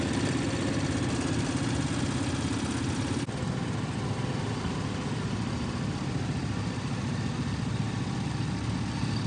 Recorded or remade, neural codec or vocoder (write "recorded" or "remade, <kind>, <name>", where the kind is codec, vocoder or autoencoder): recorded